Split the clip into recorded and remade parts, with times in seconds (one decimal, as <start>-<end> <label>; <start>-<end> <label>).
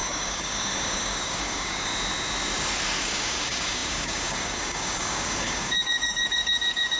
0.0-1.9 remade; 1.9-3.0 recorded; 3.0-7.0 remade